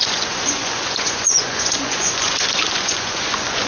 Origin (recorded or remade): remade